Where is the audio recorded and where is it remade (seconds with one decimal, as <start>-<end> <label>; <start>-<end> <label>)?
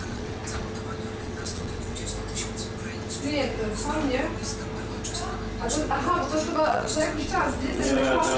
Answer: 0.0-0.4 remade; 0.4-1.2 recorded; 1.2-2.0 remade; 2.0-6.5 recorded; 6.5-8.4 remade